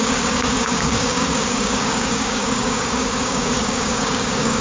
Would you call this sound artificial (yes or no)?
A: yes